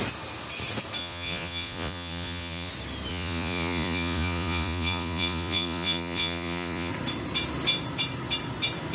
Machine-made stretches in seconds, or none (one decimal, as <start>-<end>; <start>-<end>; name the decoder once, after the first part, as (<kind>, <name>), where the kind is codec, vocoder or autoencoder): 1.0-2.7 (vocoder, Vocos); 3.1-6.9